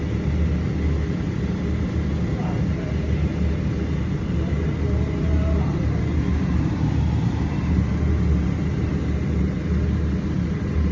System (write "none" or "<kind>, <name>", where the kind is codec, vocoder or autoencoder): none